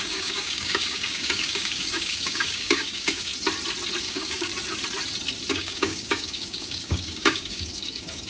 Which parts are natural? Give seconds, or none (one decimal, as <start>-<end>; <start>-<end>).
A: 3.3-4.0; 4.5-5.5